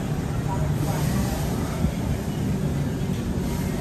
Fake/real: real